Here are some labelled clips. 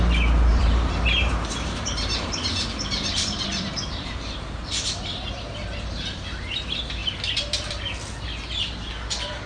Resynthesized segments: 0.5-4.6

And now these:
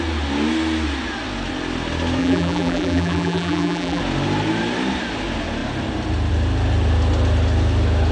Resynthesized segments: 2.2-4.0

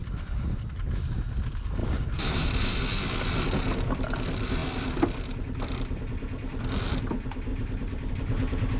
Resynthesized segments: 1.8-2.8; 7.5-8.1

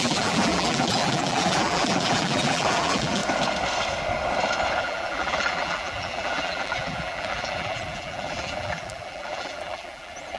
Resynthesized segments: 0.0-3.2; 4.8-10.4